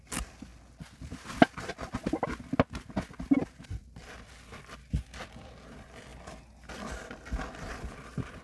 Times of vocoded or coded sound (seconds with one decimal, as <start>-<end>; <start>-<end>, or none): none